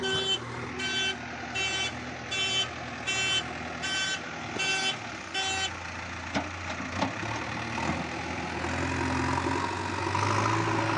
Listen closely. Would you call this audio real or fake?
real